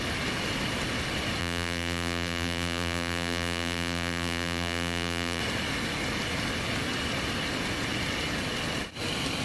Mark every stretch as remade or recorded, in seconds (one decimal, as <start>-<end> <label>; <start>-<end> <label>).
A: 0.0-1.4 recorded; 1.4-5.4 remade; 5.4-9.4 recorded